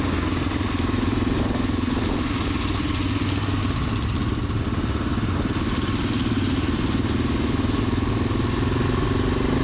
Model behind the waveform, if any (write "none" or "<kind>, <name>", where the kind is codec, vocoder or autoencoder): none